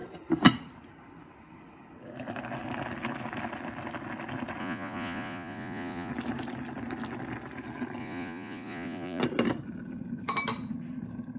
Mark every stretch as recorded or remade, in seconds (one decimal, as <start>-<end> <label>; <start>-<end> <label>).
0.0-4.6 recorded; 4.6-6.1 remade; 6.1-8.0 recorded; 8.0-9.2 remade; 9.2-11.4 recorded